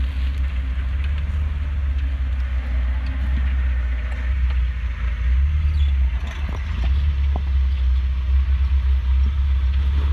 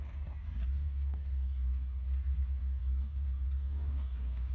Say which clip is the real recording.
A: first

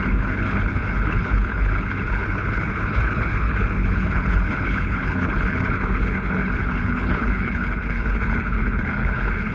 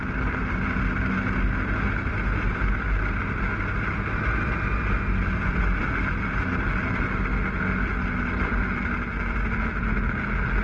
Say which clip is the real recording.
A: second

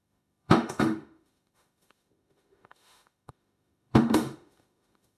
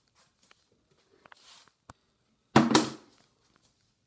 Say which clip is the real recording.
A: second